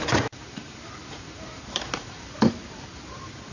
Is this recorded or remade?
remade